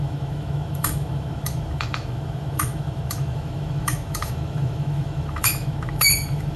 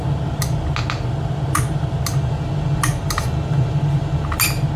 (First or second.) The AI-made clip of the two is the first